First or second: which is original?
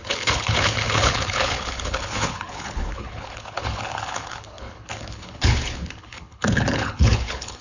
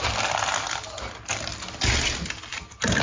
second